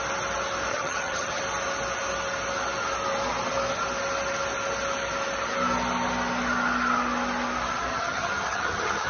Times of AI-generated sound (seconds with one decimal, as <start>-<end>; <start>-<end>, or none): 0.7-1.4; 7.9-9.1